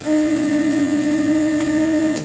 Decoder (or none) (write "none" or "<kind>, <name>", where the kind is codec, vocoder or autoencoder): vocoder, Vocos